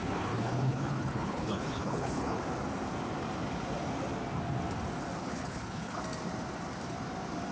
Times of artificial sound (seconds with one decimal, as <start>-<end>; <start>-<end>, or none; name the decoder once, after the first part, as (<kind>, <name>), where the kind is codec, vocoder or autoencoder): 0.0-2.4 (codec, HILCodec); 5.2-6.0